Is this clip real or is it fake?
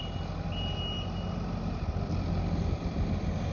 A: real